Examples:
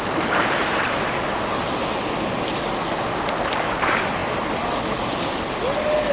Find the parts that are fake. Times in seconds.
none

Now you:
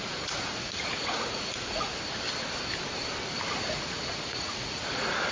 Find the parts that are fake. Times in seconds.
0.0-1.9 (vocoder, Vocos); 3.5-5.3